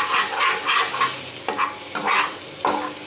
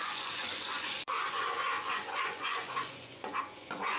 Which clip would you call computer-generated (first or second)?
second